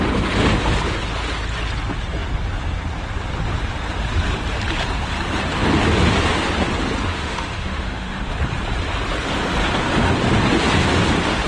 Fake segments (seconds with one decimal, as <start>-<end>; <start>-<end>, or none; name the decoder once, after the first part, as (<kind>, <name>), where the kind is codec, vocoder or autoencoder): 7.1-8.3 (autoencoder, DAC-VAE)